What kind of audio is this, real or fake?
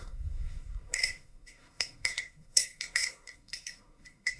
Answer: fake